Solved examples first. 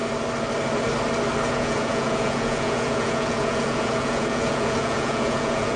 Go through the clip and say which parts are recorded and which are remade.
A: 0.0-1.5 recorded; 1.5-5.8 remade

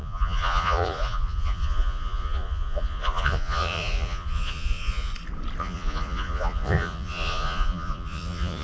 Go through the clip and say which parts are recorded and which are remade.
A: 0.0-5.1 remade; 5.1-5.6 recorded; 5.6-8.6 remade

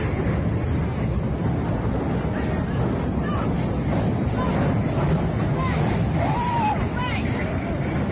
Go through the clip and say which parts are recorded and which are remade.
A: 0.0-6.5 recorded; 6.5-8.1 remade

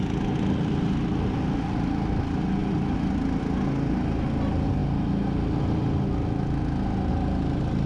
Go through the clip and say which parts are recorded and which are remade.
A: 0.0-7.9 recorded

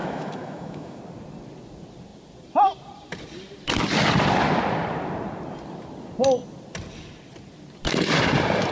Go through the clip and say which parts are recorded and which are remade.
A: 0.0-1.0 remade; 1.0-8.7 recorded

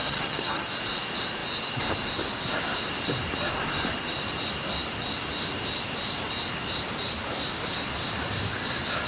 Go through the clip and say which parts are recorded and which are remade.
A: 0.0-0.7 remade; 0.7-9.1 recorded

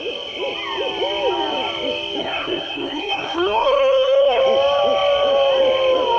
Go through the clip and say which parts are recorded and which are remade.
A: 0.0-2.2 recorded; 2.2-4.4 remade; 4.4-6.2 recorded